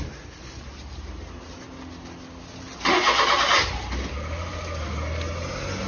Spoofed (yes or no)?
no